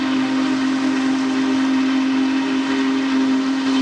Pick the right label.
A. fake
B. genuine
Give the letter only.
B